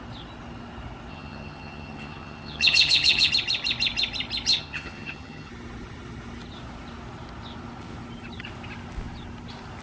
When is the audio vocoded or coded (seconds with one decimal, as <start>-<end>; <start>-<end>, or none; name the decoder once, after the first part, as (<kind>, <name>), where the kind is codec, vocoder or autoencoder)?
1.1-3.3 (vocoder, HiFi-GAN); 4.5-5.5